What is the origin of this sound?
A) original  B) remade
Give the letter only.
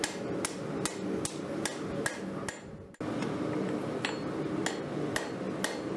A